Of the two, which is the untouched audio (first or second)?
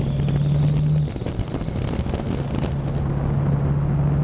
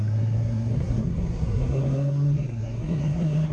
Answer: first